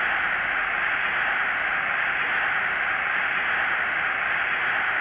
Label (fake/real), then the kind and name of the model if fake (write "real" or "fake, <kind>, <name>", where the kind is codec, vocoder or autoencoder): real